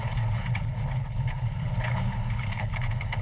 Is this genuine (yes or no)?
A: no